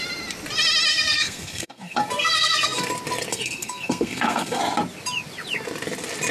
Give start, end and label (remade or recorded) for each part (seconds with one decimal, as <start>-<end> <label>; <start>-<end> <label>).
0.0-0.9 recorded; 0.9-2.9 remade; 2.9-3.3 recorded; 3.3-4.6 remade; 4.6-6.3 recorded